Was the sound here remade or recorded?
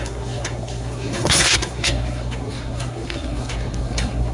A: remade